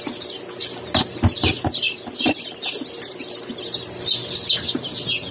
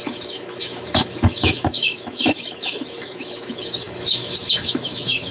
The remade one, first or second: second